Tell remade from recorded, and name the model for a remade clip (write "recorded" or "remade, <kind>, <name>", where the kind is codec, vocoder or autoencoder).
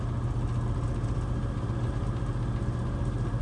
recorded